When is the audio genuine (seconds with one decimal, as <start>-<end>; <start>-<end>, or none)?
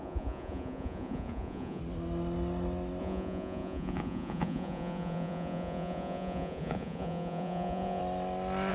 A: 1.8-3.0; 8.0-8.7